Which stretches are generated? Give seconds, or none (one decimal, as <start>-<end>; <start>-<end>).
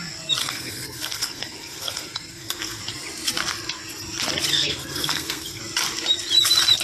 0.4-2.8; 4.5-5.6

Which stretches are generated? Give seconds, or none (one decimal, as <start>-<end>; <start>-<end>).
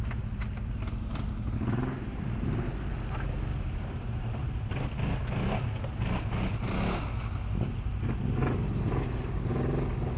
3.5-4.8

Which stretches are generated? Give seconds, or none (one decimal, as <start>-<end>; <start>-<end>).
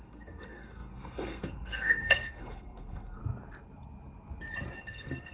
0.0-3.2; 4.8-5.3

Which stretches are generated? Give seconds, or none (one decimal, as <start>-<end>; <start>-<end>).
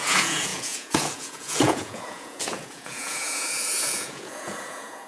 0.0-5.1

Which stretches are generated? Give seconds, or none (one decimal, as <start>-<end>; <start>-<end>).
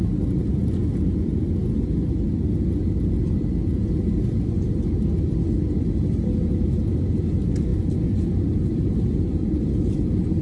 7.7-9.1